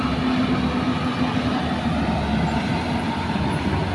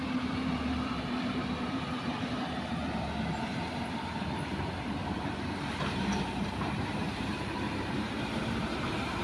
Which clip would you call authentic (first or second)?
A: first